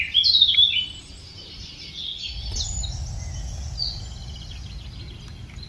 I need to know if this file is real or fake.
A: real